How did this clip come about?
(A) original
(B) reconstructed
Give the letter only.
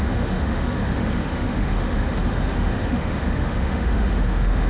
B